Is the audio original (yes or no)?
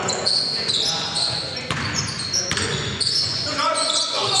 no